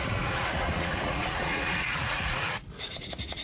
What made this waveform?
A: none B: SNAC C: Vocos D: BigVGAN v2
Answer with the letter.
C